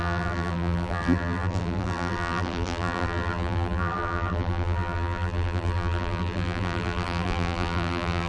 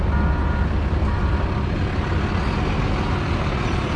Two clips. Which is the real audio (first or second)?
second